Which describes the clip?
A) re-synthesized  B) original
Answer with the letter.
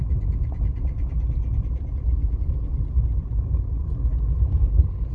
B